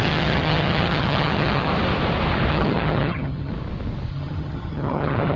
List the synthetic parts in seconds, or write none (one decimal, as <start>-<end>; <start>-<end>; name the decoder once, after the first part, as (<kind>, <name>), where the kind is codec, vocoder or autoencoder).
0.0-1.7 (vocoder, HiFi-GAN); 2.5-3.5; 4.1-5.4